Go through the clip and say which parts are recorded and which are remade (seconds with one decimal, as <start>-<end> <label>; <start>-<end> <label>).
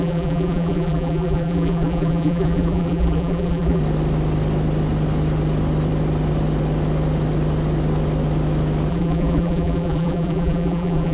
0.0-3.8 remade; 3.8-8.9 recorded; 8.9-11.1 remade